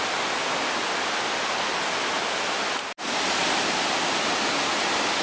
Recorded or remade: recorded